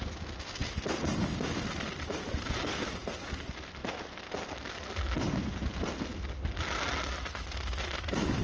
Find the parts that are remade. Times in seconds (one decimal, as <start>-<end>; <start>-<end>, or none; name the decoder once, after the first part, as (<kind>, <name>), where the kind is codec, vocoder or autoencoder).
none